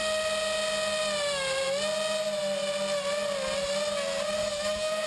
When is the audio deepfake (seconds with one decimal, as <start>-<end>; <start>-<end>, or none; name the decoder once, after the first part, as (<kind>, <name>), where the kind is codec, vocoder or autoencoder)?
4.4-5.1 (autoencoder, DAC-VAE)